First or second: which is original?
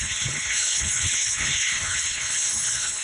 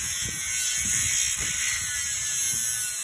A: second